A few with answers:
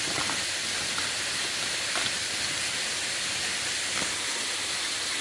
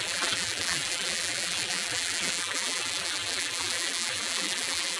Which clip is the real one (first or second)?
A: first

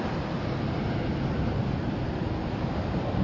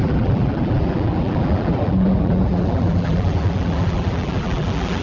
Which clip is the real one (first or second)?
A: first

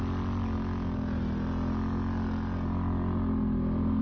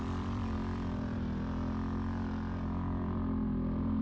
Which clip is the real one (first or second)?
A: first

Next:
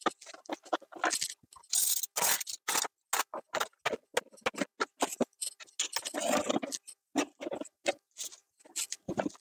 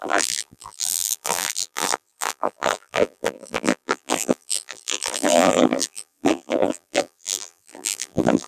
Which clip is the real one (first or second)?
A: first